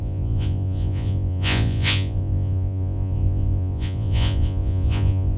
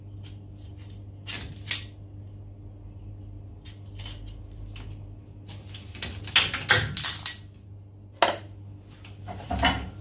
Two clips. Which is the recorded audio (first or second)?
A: second